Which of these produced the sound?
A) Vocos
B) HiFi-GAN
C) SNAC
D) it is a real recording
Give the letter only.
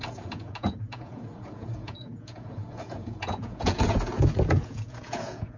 A